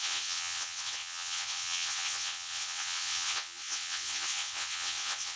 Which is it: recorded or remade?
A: remade